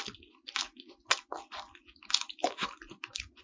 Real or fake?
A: real